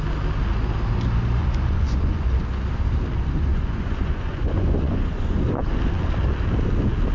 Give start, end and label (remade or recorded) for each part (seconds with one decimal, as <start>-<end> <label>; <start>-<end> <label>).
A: 0.0-1.4 recorded; 1.4-2.3 remade; 2.3-3.5 recorded; 3.5-5.6 remade; 5.6-7.1 recorded